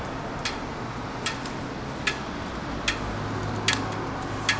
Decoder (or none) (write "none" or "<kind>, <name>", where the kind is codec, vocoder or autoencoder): none